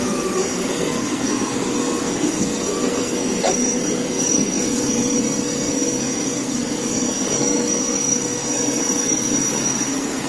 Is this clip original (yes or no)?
no